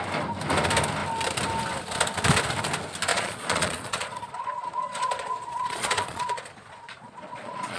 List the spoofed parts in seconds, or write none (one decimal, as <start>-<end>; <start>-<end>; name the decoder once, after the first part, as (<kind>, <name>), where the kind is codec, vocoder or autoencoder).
3.1-7.8 (vocoder, Vocos)